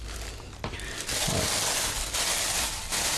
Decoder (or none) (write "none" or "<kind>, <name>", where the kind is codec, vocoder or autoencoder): none